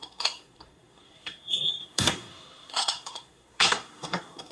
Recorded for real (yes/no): no